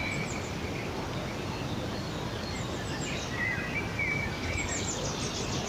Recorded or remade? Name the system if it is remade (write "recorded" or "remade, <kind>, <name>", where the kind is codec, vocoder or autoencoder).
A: recorded